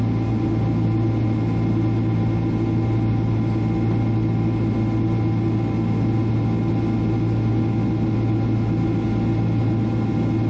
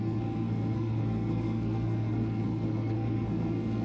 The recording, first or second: first